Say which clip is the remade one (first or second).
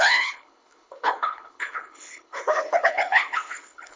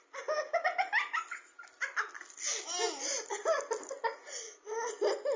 first